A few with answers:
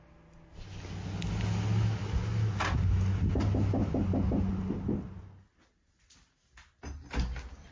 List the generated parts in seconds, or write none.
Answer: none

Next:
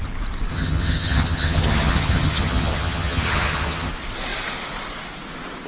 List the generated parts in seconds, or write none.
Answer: 0.5-3.9

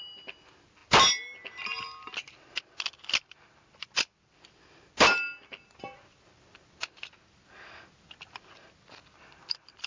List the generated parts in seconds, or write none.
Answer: none

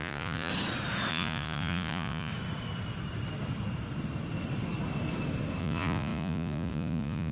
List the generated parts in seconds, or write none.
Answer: 0.0-0.5; 1.1-2.3; 5.6-7.3

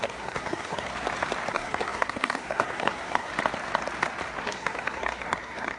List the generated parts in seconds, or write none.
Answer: 0.0-0.9; 1.5-3.3; 4.4-5.8